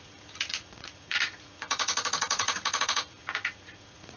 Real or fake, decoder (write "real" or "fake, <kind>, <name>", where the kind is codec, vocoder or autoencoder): fake, vocoder, Vocos